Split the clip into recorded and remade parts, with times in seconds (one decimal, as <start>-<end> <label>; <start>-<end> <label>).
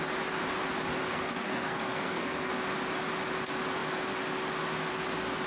0.0-1.0 recorded; 1.0-2.5 remade; 2.5-5.5 recorded